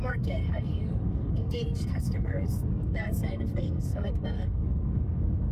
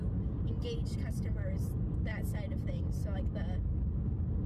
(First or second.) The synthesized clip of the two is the first